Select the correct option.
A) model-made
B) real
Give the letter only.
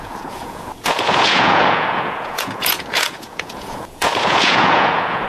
A